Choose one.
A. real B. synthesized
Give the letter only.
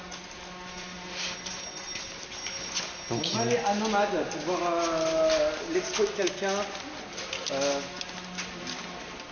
A